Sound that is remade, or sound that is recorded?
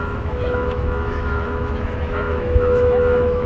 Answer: remade